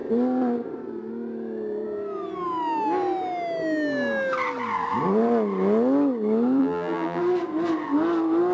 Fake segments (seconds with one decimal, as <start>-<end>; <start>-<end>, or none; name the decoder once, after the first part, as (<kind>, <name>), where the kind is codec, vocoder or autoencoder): 6.6-7.2 (vocoder, BigVGAN v2)